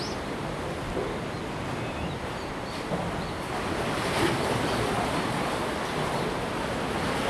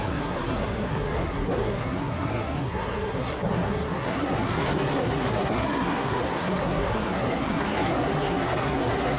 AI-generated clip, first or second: second